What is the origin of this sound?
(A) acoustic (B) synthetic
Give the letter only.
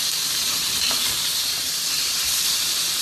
B